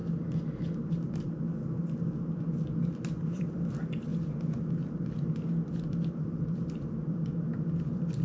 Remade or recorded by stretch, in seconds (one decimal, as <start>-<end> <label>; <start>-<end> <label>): 0.0-2.4 recorded; 2.4-4.1 remade; 4.1-5.9 recorded; 5.9-8.2 remade